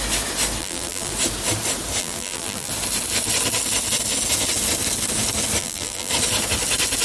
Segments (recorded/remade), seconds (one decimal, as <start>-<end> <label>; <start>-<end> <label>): 0.0-0.6 recorded; 0.6-1.1 remade; 1.1-2.0 recorded; 2.0-2.7 remade; 2.7-5.6 recorded; 5.6-6.1 remade; 6.1-7.0 recorded